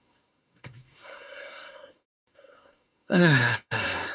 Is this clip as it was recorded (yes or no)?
no